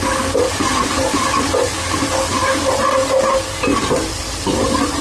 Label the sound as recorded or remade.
recorded